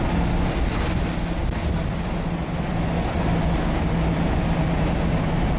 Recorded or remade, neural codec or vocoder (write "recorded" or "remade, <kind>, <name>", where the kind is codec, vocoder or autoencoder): recorded